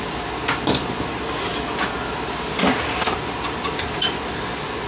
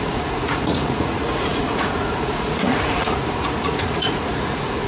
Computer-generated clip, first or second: second